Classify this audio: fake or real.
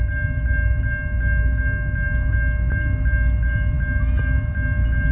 real